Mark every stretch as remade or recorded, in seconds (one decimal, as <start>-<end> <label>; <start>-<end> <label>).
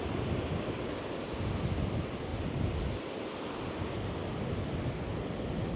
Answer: 0.0-5.8 recorded